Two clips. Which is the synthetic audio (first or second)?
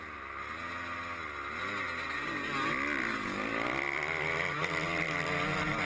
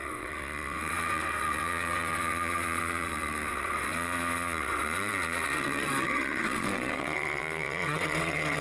second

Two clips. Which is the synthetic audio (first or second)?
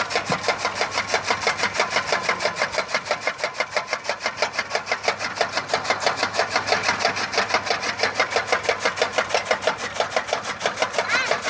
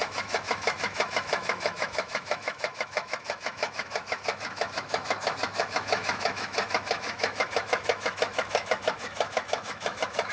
second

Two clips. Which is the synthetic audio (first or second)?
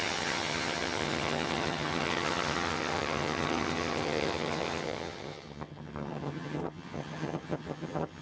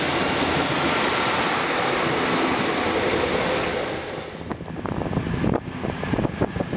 first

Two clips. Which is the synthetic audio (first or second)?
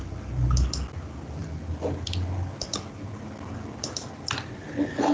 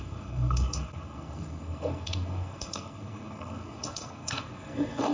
second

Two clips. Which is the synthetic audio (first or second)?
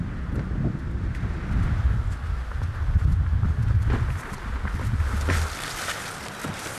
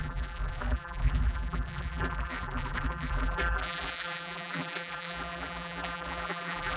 second